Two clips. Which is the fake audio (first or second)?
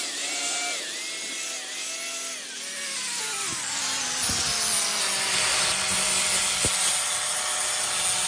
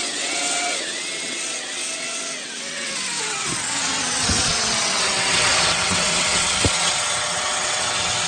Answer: second